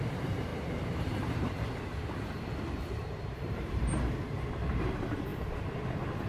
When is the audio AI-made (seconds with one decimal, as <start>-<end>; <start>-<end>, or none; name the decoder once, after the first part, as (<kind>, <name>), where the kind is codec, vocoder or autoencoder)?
0.0-5.3 (vocoder, BigVGAN v2)